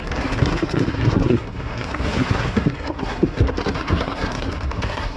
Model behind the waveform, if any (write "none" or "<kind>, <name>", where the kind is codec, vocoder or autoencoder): codec, SNAC